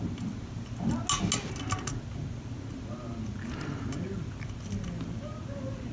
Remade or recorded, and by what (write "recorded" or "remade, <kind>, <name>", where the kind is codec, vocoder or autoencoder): recorded